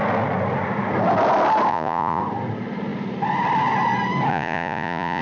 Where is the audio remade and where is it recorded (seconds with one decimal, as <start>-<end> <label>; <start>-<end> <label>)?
0.0-1.7 recorded; 1.7-2.2 remade; 2.2-4.3 recorded; 4.3-5.2 remade

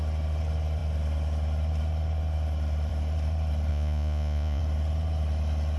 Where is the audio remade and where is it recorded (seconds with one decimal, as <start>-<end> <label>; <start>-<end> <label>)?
0.0-3.7 recorded; 3.7-4.6 remade; 4.6-5.8 recorded

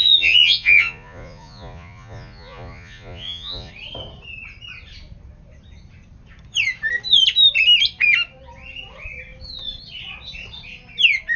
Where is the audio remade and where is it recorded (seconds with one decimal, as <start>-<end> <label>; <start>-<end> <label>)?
0.0-3.7 remade; 3.7-11.4 recorded

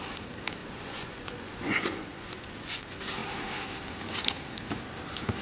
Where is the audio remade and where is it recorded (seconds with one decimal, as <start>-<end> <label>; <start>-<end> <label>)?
0.0-0.6 recorded; 0.6-2.8 remade; 2.8-5.4 recorded